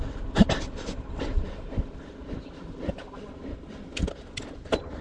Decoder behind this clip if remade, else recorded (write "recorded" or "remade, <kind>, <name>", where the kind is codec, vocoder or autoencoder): recorded